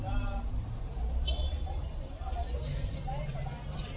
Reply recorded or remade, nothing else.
recorded